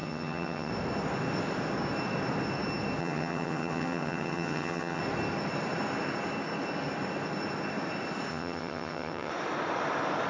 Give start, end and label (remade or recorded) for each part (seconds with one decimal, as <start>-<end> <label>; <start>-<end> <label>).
0.0-0.7 remade; 0.7-3.0 recorded; 3.0-5.0 remade; 5.0-8.3 recorded; 8.3-9.3 remade; 9.3-10.3 recorded